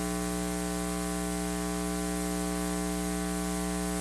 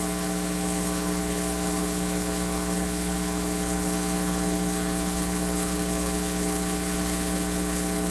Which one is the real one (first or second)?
first